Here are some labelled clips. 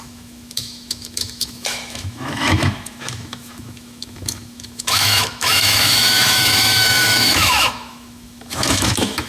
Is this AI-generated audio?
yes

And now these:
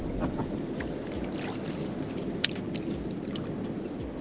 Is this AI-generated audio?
no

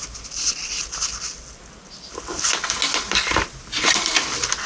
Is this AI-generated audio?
no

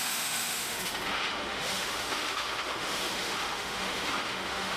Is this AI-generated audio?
yes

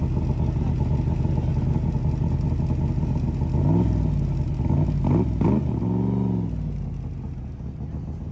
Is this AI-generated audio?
no